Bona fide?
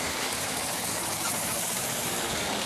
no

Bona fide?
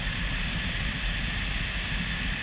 yes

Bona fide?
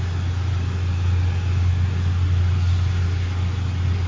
yes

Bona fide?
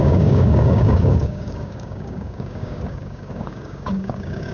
no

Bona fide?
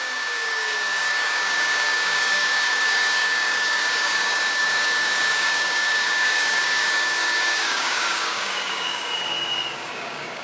no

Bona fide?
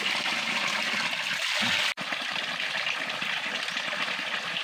yes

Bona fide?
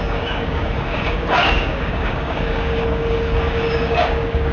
no